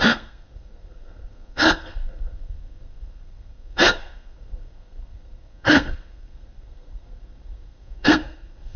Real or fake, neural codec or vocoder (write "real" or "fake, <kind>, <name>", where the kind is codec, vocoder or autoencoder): fake, codec, SNAC